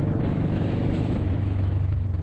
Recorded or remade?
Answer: remade